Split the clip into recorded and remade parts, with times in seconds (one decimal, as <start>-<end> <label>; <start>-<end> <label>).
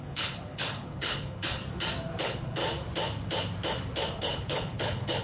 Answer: 0.0-1.6 remade; 1.6-2.2 recorded; 2.2-2.6 remade; 2.6-4.2 recorded; 4.2-5.2 remade